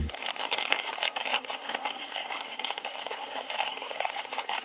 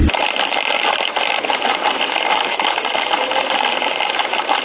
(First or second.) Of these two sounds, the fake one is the first